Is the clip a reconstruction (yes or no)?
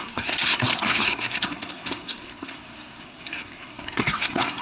yes